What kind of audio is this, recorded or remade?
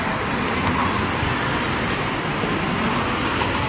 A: recorded